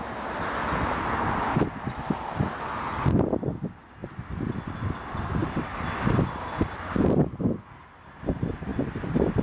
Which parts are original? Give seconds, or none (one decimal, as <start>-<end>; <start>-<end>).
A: 0.0-9.4